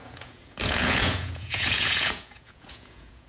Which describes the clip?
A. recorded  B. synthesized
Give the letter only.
B